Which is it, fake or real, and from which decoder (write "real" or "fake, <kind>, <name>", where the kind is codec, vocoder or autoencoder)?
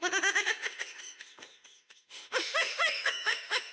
fake, autoencoder, DAC-VAE